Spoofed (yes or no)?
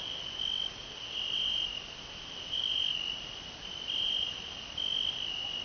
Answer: no